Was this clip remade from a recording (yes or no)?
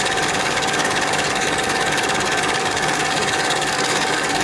yes